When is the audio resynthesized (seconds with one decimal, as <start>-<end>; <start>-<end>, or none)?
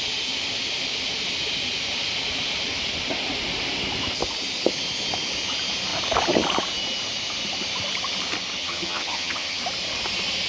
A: 8.6-9.6